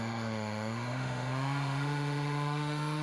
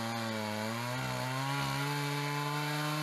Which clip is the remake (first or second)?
first